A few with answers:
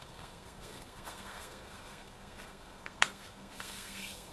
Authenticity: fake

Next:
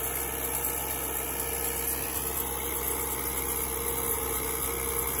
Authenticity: real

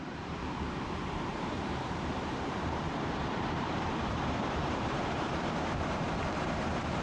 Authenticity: fake